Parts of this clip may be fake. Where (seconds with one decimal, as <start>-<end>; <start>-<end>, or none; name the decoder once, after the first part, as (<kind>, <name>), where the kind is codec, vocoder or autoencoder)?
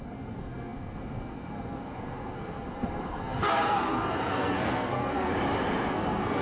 0.0-5.3 (codec, SNAC); 5.9-6.4